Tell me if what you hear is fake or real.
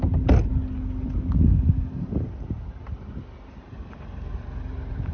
real